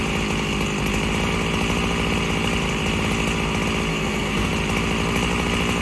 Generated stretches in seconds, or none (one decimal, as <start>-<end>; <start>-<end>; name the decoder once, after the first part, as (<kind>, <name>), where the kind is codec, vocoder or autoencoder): 3.9-4.5 (codec, SNAC)